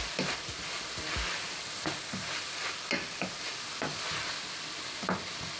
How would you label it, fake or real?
real